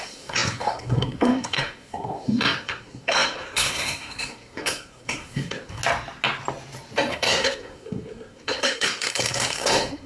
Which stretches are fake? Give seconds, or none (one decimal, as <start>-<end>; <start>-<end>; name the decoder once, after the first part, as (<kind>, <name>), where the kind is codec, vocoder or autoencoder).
0.0-5.8 (codec, SNAC); 7.1-10.1